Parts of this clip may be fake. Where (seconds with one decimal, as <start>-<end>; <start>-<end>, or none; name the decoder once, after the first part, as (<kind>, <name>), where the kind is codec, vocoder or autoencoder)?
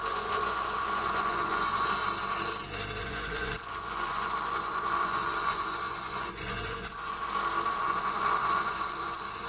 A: 0.0-2.0 (vocoder, Vocos); 3.0-7.3; 7.8-9.5